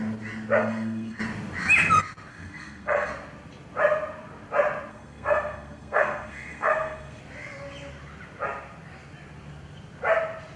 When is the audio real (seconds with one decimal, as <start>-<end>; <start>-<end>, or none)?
0.0-0.6; 1.2-2.3; 3.1-4.9; 7.2-10.6